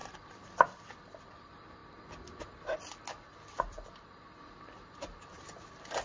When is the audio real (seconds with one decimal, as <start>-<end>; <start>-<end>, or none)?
0.0-6.0